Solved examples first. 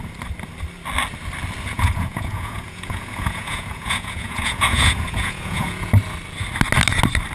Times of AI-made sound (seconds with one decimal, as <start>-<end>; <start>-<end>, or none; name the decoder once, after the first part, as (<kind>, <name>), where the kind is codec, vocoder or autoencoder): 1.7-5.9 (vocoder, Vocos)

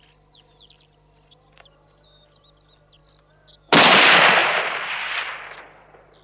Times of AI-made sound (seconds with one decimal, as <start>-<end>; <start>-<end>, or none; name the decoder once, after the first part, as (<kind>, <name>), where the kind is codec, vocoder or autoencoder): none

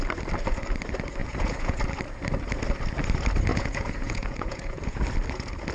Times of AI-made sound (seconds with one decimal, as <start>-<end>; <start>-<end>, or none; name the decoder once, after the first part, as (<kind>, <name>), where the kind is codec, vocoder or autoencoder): 1.2-1.8 (vocoder, Vocos); 3.5-5.0

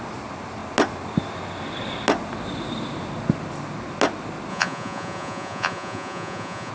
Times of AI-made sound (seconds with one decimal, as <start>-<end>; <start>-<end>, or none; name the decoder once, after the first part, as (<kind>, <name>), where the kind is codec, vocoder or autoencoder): 4.5-6.7 (vocoder, Vocos)

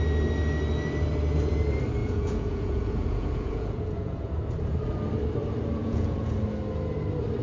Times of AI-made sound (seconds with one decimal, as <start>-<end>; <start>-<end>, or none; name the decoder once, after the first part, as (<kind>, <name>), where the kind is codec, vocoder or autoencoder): 2.0-4.3 (vocoder, Vocos); 5.8-6.3

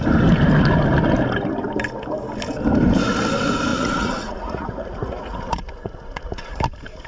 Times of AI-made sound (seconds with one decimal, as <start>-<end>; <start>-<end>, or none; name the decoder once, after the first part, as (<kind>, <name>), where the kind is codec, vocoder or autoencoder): 3.7-6.6 (vocoder, Vocos)